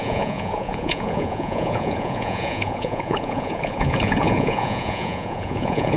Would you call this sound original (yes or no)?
no